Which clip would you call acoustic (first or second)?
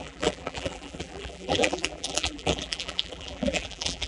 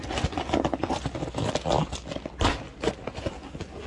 second